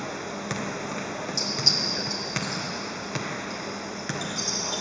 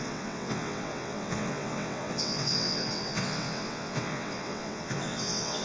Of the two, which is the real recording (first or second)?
first